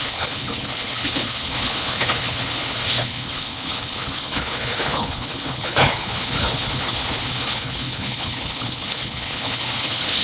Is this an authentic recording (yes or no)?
no